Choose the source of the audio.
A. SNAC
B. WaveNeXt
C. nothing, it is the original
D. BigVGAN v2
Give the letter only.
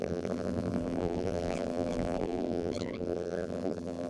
D